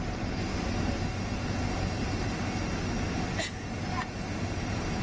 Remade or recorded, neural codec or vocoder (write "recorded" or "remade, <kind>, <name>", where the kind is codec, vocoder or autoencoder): recorded